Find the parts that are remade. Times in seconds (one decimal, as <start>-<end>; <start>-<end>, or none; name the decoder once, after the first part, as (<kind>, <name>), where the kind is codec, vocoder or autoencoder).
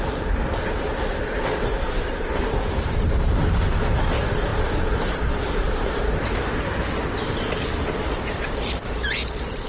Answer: 0.0-4.5 (vocoder, BigVGAN v2); 5.2-6.5; 8.0-9.7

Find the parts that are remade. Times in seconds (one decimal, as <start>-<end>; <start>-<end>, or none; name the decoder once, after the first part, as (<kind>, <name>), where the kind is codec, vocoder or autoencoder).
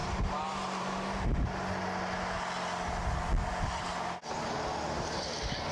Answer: 0.0-1.5 (vocoder, BigVGAN v2)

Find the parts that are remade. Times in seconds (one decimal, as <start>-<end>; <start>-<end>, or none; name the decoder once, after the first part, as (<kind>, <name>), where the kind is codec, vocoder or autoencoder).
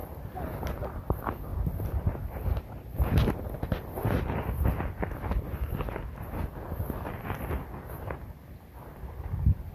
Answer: none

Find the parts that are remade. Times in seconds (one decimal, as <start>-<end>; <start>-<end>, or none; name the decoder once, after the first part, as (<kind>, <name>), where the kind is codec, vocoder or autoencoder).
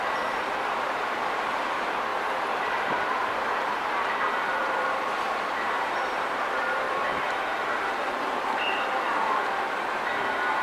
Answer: 0.0-10.6 (vocoder, BigVGAN v2)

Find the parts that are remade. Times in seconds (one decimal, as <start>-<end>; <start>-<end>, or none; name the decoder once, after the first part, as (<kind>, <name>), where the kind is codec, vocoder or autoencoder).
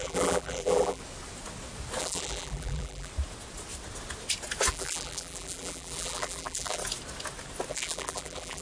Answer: 0.0-1.0 (vocoder, BigVGAN v2); 2.0-3.1; 4.7-6.8; 7.7-8.6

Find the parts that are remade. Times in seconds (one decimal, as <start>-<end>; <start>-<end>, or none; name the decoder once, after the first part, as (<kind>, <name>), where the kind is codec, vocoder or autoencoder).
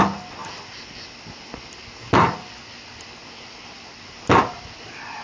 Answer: none